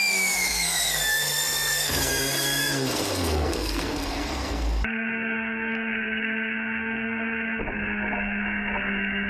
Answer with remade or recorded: remade